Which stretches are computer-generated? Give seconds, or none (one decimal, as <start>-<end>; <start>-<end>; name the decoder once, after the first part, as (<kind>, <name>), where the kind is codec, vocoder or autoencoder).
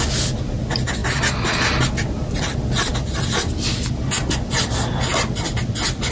none